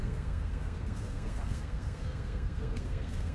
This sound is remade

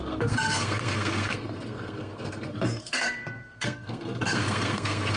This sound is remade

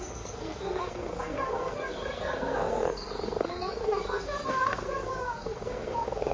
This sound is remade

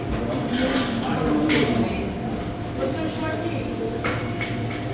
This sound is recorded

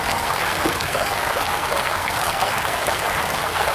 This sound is remade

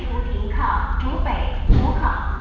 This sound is recorded